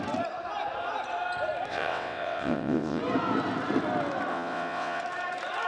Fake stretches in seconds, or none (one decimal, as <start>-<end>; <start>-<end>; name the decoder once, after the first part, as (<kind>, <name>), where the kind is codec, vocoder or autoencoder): 1.7-3.0 (vocoder, WaveNeXt); 4.3-5.0